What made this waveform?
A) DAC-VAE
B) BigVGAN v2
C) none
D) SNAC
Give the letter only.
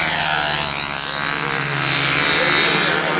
C